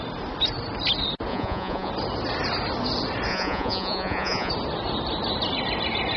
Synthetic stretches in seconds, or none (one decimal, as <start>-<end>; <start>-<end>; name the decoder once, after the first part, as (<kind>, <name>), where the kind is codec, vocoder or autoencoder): 1.3-1.9 (vocoder, Vocos); 3.3-4.5